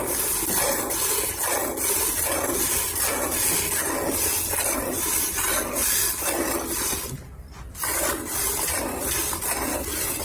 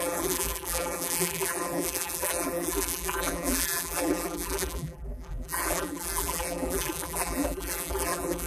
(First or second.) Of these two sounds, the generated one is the second